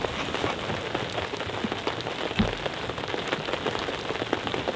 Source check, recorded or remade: recorded